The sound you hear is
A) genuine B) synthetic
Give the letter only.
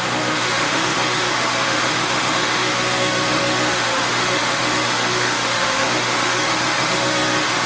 B